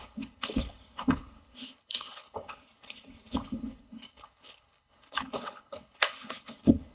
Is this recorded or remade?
remade